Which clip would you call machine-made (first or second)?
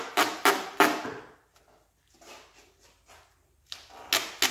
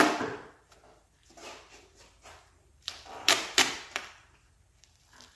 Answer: second